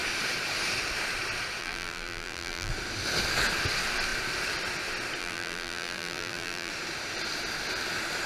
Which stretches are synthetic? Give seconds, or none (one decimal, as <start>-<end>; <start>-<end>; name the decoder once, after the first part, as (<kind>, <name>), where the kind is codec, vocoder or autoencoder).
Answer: 1.6-2.7 (vocoder, BigVGAN v2); 5.2-6.7